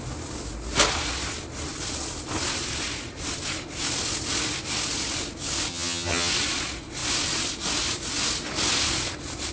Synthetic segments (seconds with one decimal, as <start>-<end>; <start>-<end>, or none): 5.7-6.3